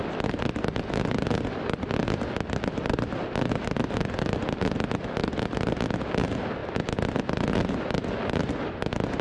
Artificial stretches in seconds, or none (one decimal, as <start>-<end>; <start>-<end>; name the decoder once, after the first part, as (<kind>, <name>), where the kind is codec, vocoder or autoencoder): none